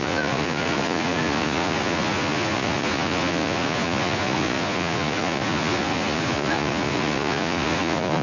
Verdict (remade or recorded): remade